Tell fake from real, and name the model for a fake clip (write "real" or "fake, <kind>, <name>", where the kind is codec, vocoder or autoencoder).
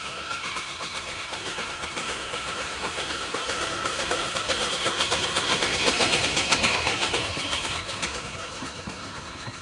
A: fake, codec, SNAC